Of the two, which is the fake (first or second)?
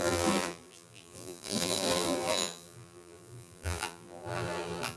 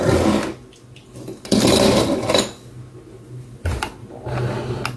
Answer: first